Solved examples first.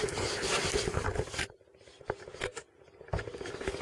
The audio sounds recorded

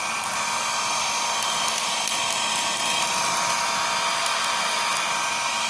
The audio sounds recorded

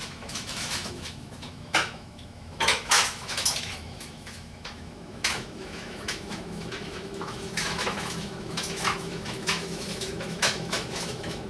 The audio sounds remade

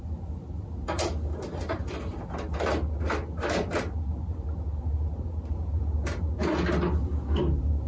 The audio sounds recorded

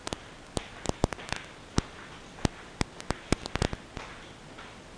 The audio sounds recorded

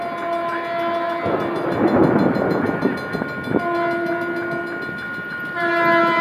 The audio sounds recorded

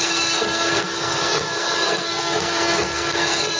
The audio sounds remade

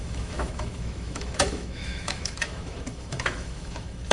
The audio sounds remade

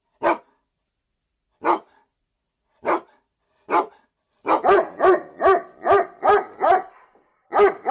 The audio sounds remade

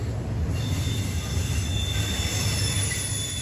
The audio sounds recorded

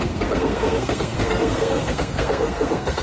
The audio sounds remade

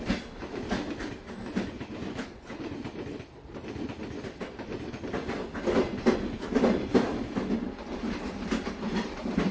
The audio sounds recorded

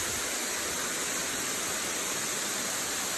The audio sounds recorded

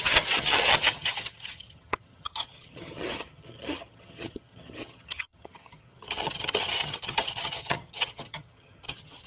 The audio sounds remade